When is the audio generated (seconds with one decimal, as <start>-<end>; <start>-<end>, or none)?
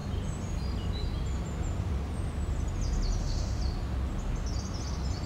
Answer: 3.2-3.6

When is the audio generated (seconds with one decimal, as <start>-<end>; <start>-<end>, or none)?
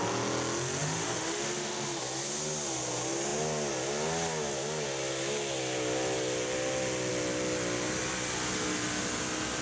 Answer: 0.8-2.0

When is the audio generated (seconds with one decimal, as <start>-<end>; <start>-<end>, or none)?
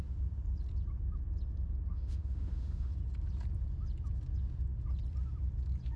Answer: 1.9-2.9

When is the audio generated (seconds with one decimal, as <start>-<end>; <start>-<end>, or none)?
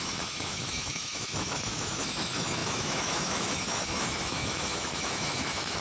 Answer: 0.0-5.8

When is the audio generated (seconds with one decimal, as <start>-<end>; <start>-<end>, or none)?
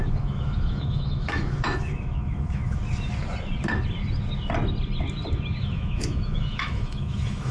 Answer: 0.0-2.8; 5.6-7.5